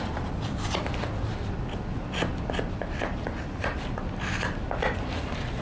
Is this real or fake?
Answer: real